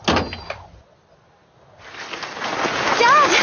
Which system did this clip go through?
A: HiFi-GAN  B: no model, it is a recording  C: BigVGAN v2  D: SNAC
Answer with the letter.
B